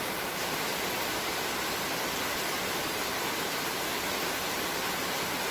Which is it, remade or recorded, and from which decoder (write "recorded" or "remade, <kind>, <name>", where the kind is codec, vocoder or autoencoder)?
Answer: recorded